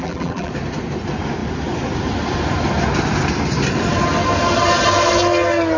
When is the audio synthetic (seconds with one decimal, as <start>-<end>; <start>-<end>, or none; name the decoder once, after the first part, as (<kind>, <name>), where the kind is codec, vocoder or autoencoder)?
0.0-0.5 (vocoder, BigVGAN v2)